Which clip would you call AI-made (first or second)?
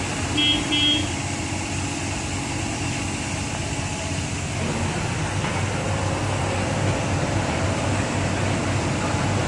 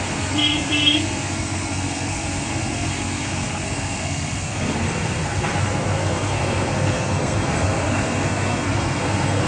second